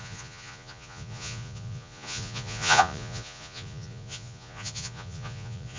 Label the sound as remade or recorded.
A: remade